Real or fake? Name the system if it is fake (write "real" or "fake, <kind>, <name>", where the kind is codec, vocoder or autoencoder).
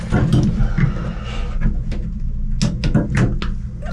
real